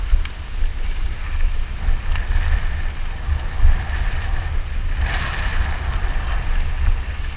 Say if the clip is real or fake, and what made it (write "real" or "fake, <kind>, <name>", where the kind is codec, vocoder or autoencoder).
real